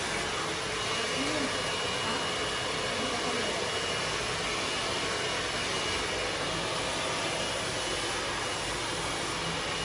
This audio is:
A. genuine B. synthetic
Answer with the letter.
A